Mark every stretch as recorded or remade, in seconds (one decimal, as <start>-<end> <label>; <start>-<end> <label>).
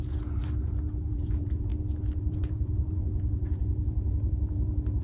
0.0-0.4 remade; 0.4-1.1 recorded; 1.1-1.7 remade; 1.7-2.3 recorded; 2.3-5.0 remade